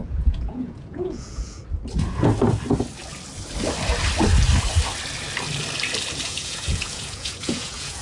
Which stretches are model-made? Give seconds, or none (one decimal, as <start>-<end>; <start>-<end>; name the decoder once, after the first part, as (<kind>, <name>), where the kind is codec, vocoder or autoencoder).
0.0-1.6 (vocoder, Vocos); 6.2-8.0

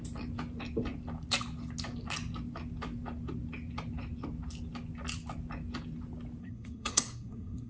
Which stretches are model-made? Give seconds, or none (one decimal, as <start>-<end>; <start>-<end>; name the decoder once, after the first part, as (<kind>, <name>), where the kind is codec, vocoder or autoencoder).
6.4-7.7 (codec, SNAC)

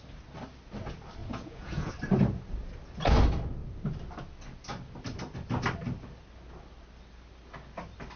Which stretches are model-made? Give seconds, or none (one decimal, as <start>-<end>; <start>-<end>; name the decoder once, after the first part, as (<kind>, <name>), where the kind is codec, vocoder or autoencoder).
1.2-1.9 (vocoder, Vocos)